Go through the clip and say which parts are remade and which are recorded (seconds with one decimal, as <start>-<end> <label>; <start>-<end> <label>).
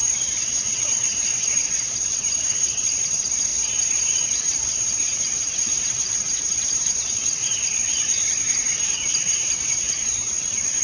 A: 0.0-10.8 remade